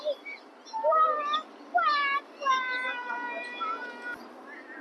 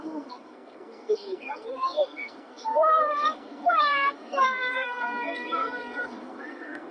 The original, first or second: first